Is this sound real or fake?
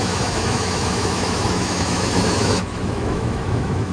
fake